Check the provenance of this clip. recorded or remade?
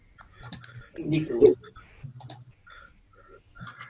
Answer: recorded